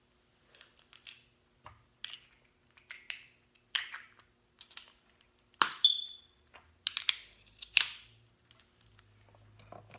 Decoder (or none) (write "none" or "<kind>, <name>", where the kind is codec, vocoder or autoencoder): none